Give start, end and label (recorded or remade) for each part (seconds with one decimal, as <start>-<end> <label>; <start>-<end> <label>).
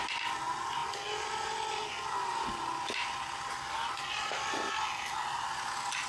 0.0-6.1 recorded